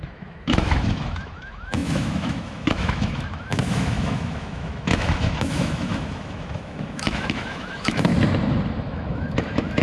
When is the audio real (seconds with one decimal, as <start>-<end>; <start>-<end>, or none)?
8.1-8.8